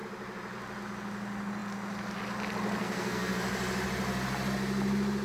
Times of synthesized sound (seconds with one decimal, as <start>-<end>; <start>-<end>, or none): 2.8-3.4